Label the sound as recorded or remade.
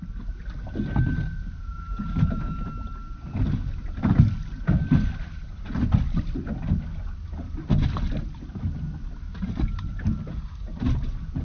recorded